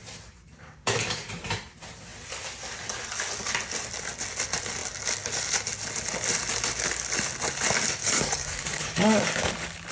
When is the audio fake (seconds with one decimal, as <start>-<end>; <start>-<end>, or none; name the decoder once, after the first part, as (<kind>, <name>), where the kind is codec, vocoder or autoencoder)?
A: 0.6-1.3 (codec, DAC); 8.0-9.5